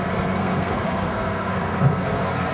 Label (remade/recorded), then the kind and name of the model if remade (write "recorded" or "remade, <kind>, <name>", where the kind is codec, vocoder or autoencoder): remade, codec, SNAC